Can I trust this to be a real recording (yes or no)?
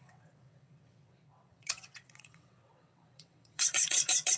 no